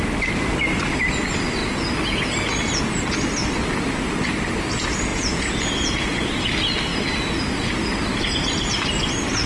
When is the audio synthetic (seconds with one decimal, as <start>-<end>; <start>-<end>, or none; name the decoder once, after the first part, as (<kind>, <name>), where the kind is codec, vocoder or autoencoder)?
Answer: 5.1-6.3 (vocoder, Vocos)